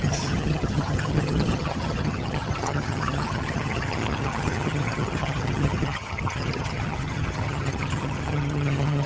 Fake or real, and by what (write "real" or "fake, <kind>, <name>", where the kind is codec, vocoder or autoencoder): fake, vocoder, HiFi-GAN